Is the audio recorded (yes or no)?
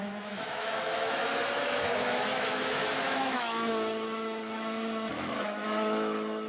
no